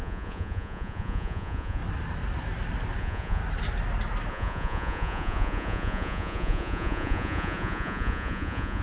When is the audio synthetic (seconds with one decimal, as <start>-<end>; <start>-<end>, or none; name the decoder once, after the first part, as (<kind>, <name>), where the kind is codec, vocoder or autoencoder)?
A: 0.0-1.8 (vocoder, Vocos); 3.0-3.4; 4.3-8.8